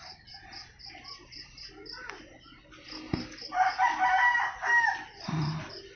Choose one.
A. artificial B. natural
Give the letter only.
B